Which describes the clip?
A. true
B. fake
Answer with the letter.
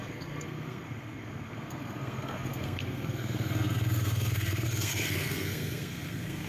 B